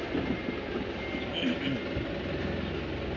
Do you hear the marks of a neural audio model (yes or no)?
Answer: no